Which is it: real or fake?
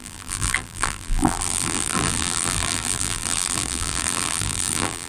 fake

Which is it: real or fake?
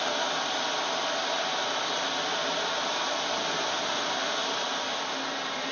real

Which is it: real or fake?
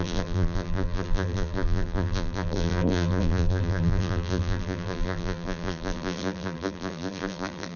fake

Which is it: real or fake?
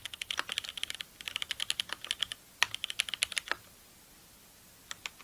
real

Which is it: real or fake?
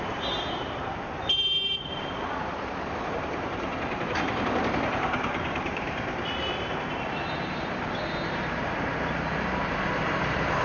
fake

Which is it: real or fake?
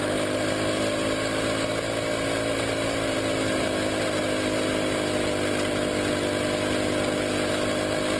real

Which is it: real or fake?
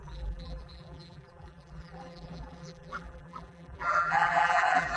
fake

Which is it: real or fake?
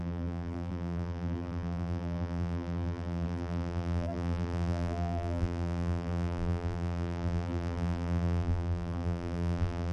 fake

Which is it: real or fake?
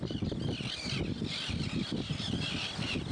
real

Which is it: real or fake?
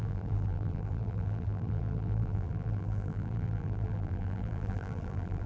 fake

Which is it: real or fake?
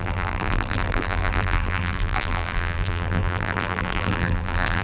fake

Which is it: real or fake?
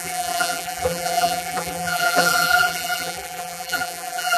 fake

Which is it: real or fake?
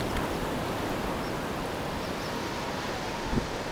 real